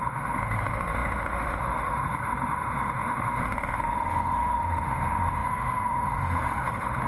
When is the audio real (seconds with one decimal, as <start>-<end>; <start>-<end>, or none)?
none